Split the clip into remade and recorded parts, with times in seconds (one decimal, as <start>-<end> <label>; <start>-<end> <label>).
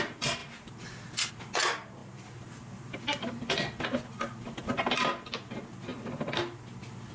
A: 0.0-0.4 recorded; 0.4-1.3 remade; 1.3-2.0 recorded; 2.0-3.4 remade; 3.4-7.1 recorded